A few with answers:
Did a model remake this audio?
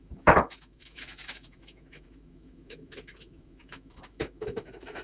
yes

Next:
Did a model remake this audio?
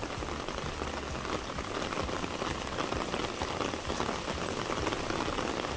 no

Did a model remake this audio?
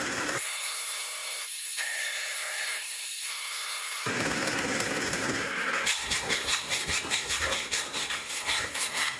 yes